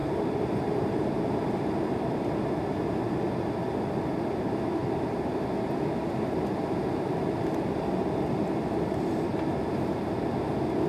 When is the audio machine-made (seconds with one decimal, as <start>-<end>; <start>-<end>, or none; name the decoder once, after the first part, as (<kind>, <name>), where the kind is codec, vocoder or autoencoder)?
0.0-2.3 (vocoder, BigVGAN v2)